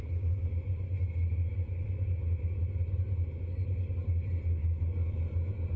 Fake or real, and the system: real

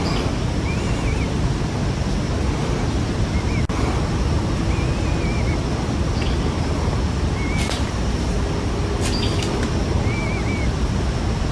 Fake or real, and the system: real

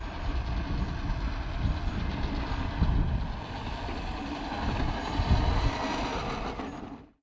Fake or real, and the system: real